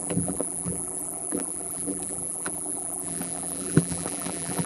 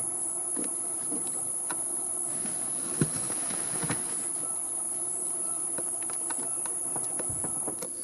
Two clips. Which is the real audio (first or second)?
second